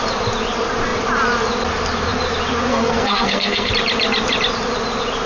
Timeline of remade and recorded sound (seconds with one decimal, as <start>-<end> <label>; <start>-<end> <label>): 0.0-2.7 recorded; 2.7-3.7 remade; 3.7-5.3 recorded